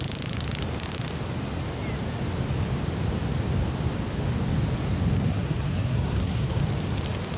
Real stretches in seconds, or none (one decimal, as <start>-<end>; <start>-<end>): 0.0-5.2; 6.6-7.4